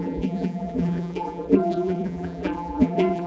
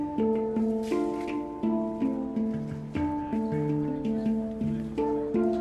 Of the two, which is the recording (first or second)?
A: second